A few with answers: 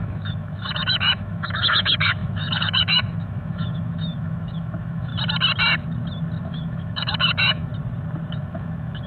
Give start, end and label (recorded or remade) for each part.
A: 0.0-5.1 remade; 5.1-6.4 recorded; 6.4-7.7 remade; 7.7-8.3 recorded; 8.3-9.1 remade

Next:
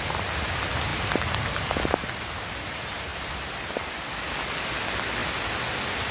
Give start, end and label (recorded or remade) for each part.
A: 0.0-0.9 recorded; 0.9-2.2 remade; 2.2-3.1 recorded; 3.1-3.7 remade; 3.7-6.1 recorded

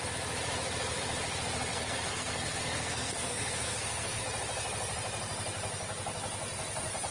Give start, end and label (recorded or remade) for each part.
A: 0.0-1.7 recorded; 1.7-4.2 remade; 4.2-7.1 recorded

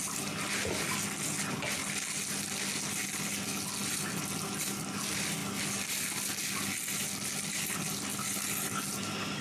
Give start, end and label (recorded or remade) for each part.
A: 0.0-9.4 recorded

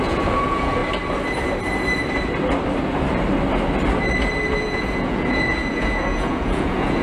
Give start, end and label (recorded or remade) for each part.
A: 0.0-0.8 remade; 0.8-4.5 recorded; 4.5-7.0 remade

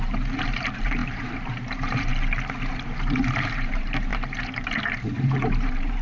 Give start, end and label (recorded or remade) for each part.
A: 0.0-2.1 remade; 2.1-2.7 recorded; 2.7-6.0 remade

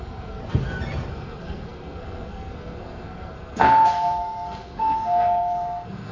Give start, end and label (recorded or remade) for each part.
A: 0.0-0.4 remade; 0.4-1.1 recorded; 1.1-6.1 remade

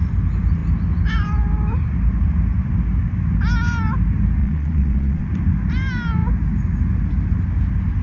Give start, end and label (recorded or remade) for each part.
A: 0.0-4.4 recorded; 4.4-5.3 remade; 5.3-8.0 recorded